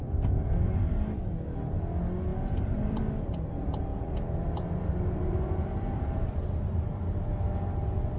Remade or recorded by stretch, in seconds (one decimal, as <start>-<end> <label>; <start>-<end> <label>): 0.0-2.3 recorded; 2.3-3.0 remade; 3.0-3.9 recorded; 3.9-6.8 remade; 6.8-8.2 recorded